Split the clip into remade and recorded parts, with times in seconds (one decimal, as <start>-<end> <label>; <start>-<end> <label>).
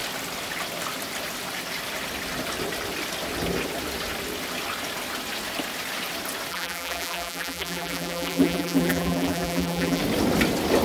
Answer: 0.0-6.5 recorded; 6.5-10.0 remade; 10.0-10.8 recorded